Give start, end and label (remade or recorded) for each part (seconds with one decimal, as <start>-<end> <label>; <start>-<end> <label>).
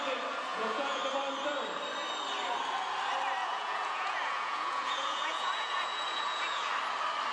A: 0.0-0.5 recorded; 0.5-1.0 remade; 1.0-3.4 recorded; 3.4-6.7 remade; 6.7-7.3 recorded